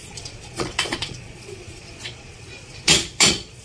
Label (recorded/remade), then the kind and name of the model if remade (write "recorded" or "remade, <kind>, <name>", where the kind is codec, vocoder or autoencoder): remade, vocoder, Vocos